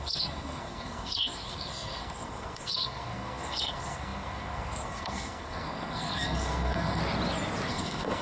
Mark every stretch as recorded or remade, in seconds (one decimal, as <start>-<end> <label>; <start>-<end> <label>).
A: 0.0-7.0 remade; 7.0-7.7 recorded; 7.7-8.2 remade